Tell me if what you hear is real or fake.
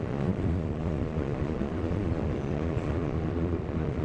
fake